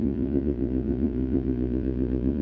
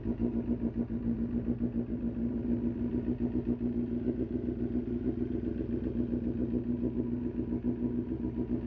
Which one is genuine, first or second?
second